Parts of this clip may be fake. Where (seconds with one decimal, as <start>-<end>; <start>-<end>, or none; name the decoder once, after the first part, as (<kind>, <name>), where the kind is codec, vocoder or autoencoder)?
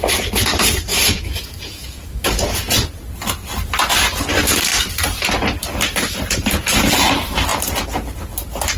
0.9-2.3 (autoencoder, DAC-VAE)